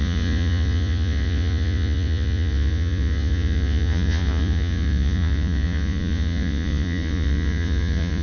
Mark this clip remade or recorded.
remade